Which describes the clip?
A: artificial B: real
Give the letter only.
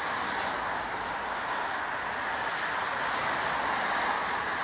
B